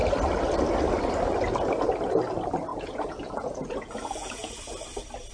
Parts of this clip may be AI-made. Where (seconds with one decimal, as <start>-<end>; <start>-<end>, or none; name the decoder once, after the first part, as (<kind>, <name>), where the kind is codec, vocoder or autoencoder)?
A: 2.7-4.5 (vocoder, Vocos)